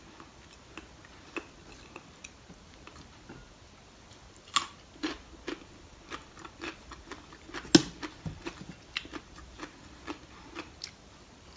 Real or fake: real